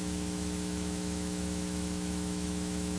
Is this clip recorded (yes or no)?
no